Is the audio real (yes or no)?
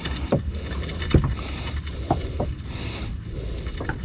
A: yes